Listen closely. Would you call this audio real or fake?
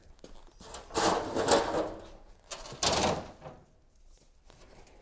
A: real